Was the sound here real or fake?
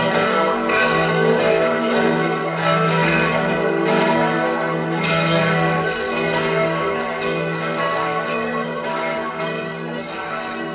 fake